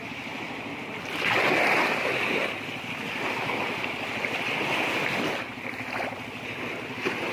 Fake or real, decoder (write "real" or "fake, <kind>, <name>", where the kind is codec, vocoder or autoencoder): real